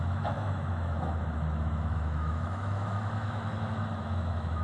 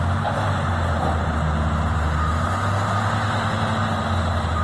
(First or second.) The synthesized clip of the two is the first